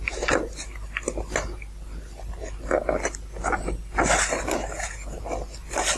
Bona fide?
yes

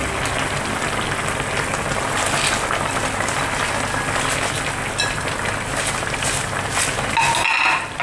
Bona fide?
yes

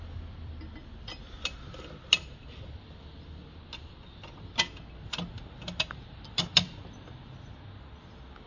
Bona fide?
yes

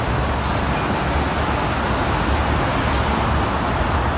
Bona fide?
yes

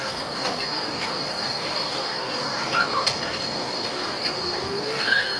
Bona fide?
no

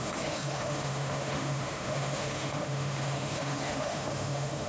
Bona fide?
no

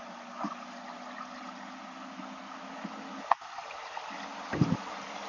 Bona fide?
yes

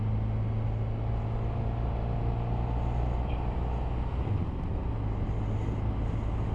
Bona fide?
yes